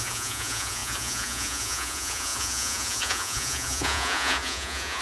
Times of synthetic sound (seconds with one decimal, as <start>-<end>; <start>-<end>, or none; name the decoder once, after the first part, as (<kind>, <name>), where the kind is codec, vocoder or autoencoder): 0.0-5.0 (vocoder, Vocos)